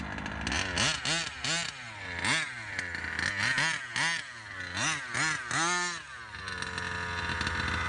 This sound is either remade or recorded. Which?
recorded